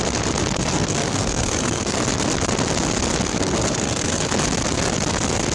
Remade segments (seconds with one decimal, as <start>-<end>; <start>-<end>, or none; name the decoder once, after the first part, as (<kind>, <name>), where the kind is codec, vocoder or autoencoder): 0.6-2.0 (codec, SNAC); 3.3-4.3